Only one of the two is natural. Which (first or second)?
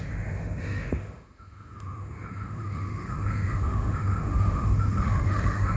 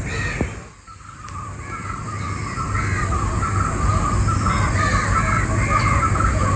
second